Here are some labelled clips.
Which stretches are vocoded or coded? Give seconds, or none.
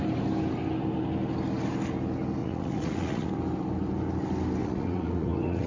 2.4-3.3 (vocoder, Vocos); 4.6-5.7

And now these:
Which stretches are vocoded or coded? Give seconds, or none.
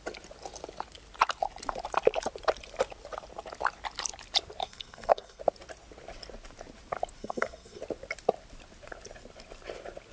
4.6-5.4 (codec, SNAC); 7.2-7.8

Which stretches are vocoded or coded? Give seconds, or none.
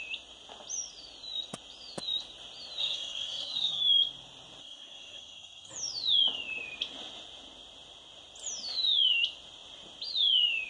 2.8-3.8 (codec, SNAC); 4.6-5.7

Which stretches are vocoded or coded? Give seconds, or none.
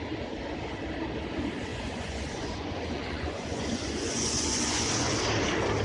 1.7-5.2 (vocoder, Vocos)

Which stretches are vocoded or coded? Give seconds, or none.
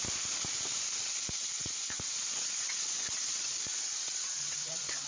1.0-5.1 (vocoder, WaveNeXt)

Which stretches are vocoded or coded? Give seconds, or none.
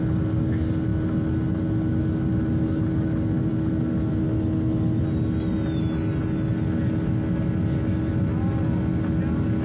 none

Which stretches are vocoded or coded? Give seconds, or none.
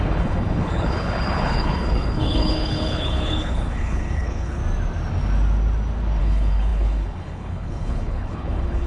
0.0-4.6 (codec, HILCodec); 6.2-8.9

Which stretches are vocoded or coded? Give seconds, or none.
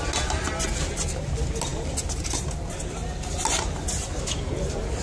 none